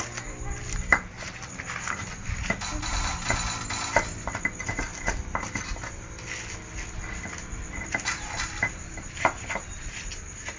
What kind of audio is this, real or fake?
real